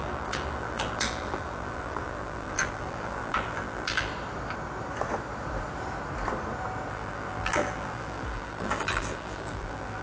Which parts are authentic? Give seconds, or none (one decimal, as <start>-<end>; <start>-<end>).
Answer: 4.1-6.9